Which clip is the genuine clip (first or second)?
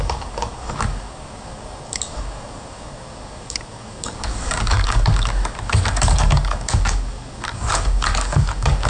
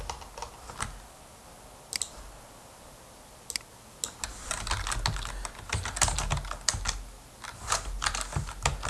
second